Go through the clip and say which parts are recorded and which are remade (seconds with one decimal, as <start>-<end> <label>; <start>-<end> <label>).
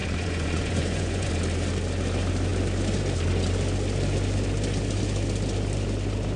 0.0-1.3 remade; 1.3-6.4 recorded